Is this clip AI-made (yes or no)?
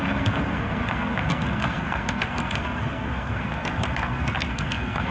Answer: yes